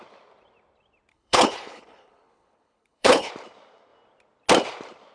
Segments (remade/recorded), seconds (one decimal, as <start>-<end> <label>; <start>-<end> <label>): 0.0-1.1 recorded; 1.1-3.3 remade; 3.3-5.1 recorded